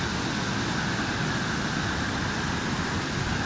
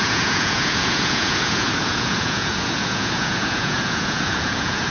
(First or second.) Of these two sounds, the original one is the first